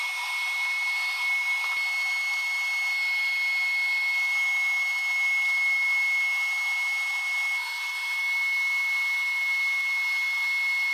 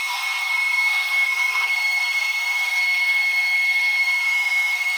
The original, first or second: first